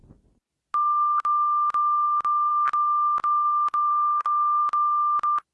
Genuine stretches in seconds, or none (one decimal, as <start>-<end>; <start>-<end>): 0.0-3.9; 4.6-5.5